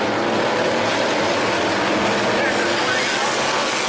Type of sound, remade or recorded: recorded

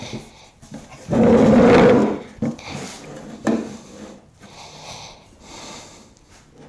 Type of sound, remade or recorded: recorded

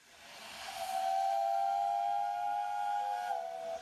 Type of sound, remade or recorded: recorded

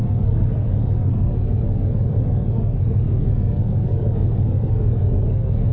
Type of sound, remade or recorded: remade